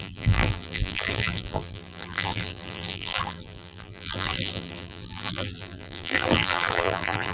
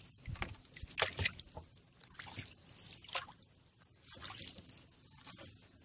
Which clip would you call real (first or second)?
second